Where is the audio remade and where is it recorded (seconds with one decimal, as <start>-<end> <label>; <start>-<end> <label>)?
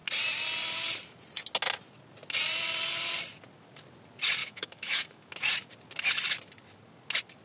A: 0.0-4.4 recorded; 4.4-5.3 remade; 5.3-7.4 recorded